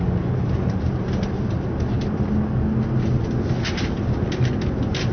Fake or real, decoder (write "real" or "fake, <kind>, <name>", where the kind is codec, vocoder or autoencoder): real